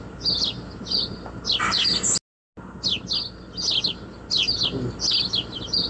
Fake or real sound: real